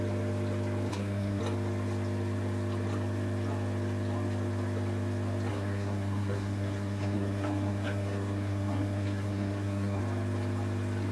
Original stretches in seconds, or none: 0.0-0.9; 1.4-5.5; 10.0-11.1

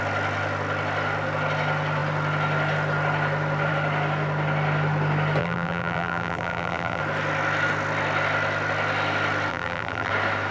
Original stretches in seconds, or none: 0.0-5.4; 7.0-9.5; 10.1-10.5

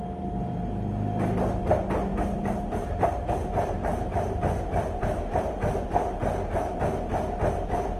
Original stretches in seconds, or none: 0.0-2.1; 6.8-8.0